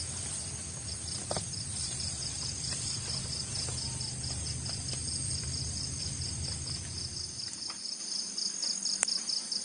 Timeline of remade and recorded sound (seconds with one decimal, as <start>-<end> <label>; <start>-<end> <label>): 0.0-1.8 recorded; 1.8-6.0 remade; 6.0-8.6 recorded; 8.6-9.2 remade; 9.2-9.6 recorded